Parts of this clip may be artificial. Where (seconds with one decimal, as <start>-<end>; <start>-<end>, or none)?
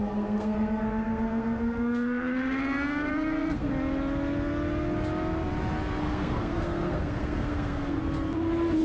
0.0-3.7; 6.0-8.0